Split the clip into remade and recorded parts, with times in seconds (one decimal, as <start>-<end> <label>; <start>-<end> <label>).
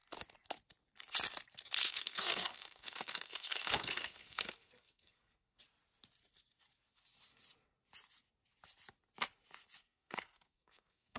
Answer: 0.0-1.8 recorded; 1.8-5.6 remade; 5.6-9.8 recorded; 9.8-11.2 remade